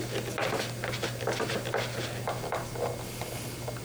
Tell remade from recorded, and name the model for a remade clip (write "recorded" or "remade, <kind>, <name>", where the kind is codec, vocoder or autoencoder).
recorded